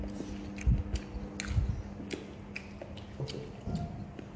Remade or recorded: recorded